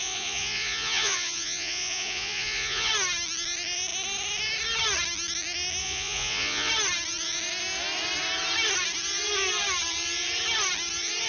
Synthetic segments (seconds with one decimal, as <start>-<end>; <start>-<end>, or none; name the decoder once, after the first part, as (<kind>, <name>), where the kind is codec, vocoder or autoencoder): 0.0-2.9 (vocoder, Vocos); 5.8-6.7